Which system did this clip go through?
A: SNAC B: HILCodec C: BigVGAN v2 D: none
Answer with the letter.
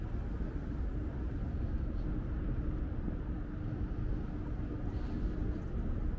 D